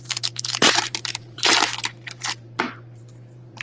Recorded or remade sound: remade